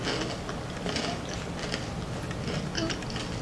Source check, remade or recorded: recorded